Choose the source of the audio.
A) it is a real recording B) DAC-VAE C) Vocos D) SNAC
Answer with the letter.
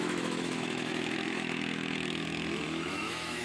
B